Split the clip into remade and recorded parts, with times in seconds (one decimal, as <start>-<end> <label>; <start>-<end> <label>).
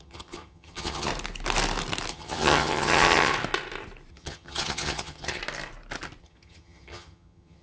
0.0-1.1 remade; 1.1-2.1 recorded; 2.1-3.3 remade; 3.3-4.1 recorded; 4.1-5.4 remade; 5.4-6.2 recorded; 6.2-7.6 remade